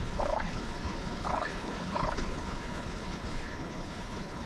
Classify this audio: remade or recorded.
remade